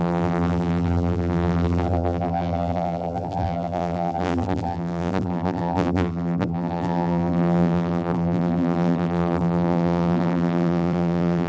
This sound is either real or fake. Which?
fake